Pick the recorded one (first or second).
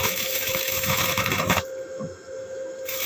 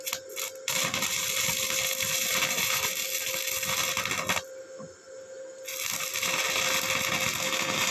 second